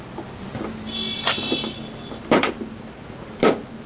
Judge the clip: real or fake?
real